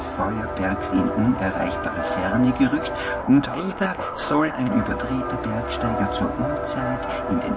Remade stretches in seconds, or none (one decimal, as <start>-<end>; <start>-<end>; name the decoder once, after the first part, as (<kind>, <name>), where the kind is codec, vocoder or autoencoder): 3.2-4.7 (codec, ZipCodec)